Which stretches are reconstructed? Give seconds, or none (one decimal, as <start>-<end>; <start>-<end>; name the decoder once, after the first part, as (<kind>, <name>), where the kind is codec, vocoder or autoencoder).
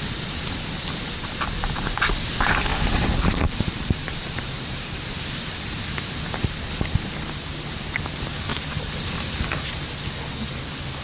2.7-5.7 (vocoder, BigVGAN v2); 8.5-10.0